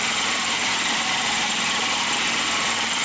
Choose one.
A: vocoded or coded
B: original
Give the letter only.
A